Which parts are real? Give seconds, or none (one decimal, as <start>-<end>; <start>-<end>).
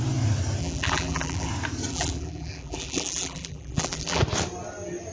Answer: 0.0-0.6; 1.5-1.9; 4.2-5.1